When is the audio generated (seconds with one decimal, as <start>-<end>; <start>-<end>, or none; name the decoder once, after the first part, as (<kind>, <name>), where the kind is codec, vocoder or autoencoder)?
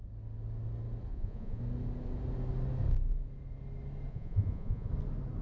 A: 1.1-1.6 (vocoder, Vocos); 4.1-4.9